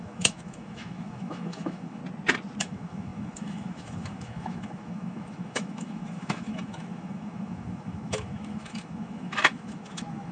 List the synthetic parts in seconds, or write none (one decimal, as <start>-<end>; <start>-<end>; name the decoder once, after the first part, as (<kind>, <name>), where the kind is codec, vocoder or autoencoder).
0.0-2.0 (autoencoder, DAC-VAE); 2.6-10.3